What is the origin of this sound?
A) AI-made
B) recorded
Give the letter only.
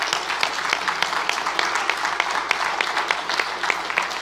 B